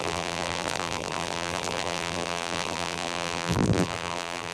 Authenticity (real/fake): fake